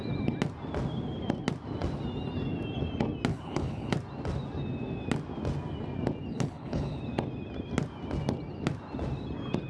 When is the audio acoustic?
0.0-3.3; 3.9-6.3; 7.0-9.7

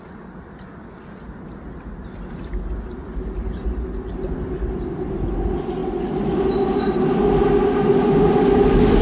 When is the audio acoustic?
0.0-9.0

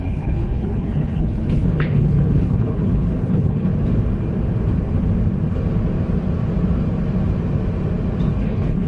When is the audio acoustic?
3.7-8.4